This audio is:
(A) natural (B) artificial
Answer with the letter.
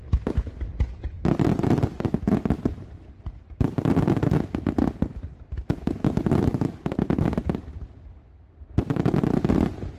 A